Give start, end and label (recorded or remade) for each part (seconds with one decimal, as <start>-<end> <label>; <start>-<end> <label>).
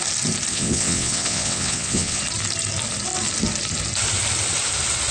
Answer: 0.0-0.5 recorded; 0.5-2.2 remade; 2.2-5.1 recorded